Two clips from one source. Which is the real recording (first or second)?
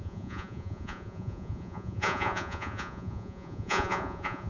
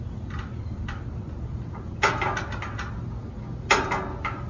second